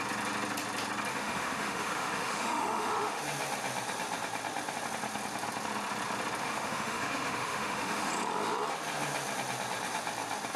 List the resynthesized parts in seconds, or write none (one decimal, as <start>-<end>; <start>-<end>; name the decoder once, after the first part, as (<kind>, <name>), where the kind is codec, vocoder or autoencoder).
1.1-3.2 (autoencoder, DAC-VAE); 6.4-8.1